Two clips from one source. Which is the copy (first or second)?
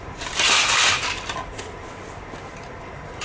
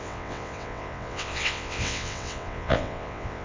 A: second